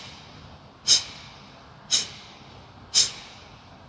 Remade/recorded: recorded